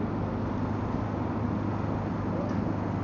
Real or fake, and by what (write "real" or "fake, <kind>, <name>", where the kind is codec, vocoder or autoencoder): real